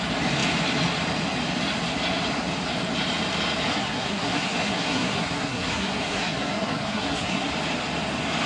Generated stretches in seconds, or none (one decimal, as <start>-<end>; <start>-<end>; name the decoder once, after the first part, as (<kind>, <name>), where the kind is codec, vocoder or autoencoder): 3.7-7.5 (codec, SNAC)